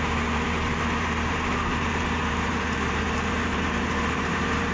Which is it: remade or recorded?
remade